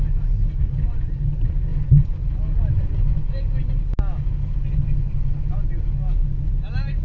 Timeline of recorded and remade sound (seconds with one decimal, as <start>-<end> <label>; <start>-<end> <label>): 0.0-1.7 recorded; 1.7-2.4 remade; 2.4-7.0 recorded